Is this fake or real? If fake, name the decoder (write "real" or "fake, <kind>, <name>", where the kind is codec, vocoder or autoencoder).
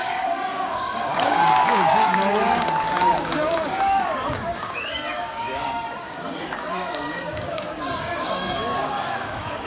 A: fake, codec, DAC